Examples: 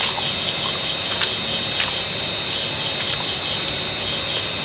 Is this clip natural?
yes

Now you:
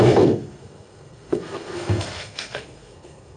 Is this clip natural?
no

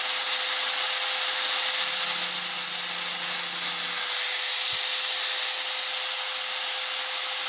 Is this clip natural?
yes